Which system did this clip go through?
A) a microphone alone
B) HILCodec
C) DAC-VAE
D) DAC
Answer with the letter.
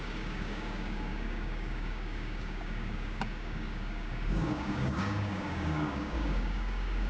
D